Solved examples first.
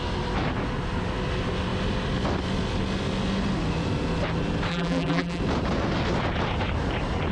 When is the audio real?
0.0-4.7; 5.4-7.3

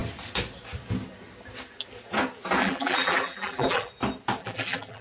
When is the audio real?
0.0-2.6; 3.9-4.4

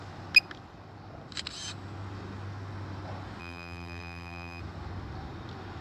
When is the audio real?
0.0-3.4; 4.6-5.8

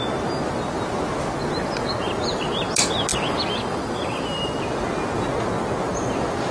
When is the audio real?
0.0-3.1; 4.6-6.5

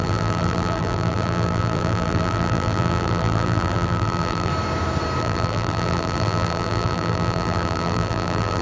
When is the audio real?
4.5-5.2